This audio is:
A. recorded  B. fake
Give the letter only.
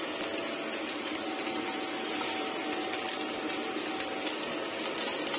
A